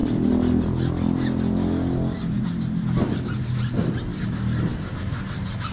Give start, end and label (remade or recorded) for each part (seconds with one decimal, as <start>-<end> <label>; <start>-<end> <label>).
0.0-5.7 recorded